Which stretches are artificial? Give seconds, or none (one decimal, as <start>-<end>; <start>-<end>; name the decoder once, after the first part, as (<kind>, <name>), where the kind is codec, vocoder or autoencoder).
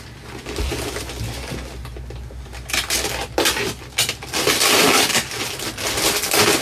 none